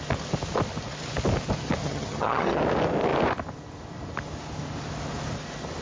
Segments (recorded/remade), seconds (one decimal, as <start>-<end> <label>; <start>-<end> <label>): 0.0-1.8 recorded; 1.8-2.6 remade; 2.6-5.8 recorded